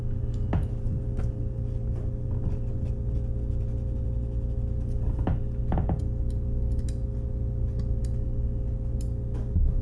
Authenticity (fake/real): real